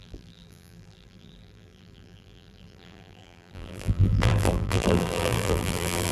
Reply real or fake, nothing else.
fake